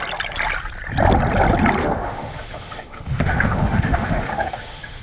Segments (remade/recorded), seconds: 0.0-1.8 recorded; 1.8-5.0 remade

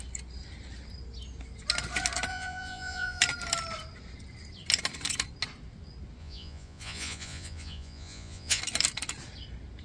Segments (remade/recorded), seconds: 0.0-2.3 recorded; 2.3-3.2 remade; 3.2-6.2 recorded; 6.2-8.6 remade; 8.6-9.8 recorded

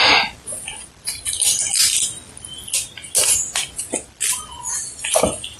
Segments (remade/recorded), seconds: 0.0-5.6 recorded

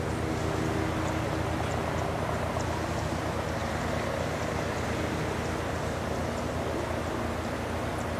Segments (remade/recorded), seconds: 0.0-8.2 recorded